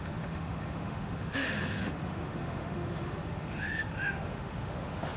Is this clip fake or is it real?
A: fake